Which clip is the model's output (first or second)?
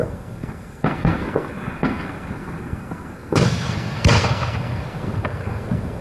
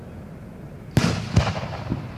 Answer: first